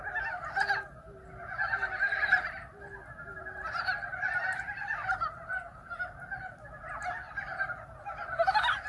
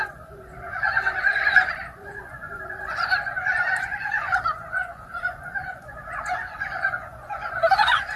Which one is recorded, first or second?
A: first